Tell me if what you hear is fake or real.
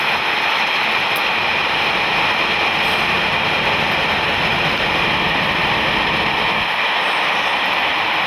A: real